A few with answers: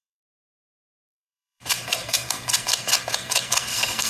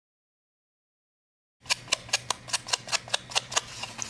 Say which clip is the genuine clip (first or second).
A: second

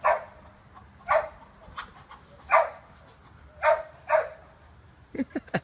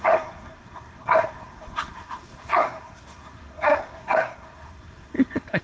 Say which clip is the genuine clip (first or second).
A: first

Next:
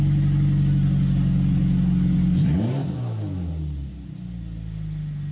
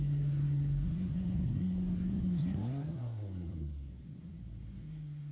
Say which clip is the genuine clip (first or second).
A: first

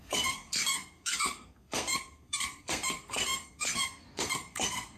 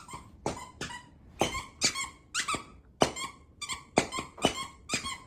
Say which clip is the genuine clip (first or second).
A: second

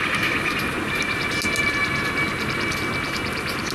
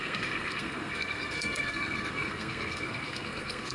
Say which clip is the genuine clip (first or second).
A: first